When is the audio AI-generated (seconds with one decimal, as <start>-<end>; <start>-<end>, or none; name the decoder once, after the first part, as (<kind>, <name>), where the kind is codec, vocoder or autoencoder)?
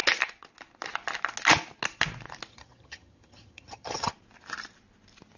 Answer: 2.5-4.1 (vocoder, HiFi-GAN)